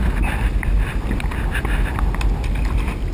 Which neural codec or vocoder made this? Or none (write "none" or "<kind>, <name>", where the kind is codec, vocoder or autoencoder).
none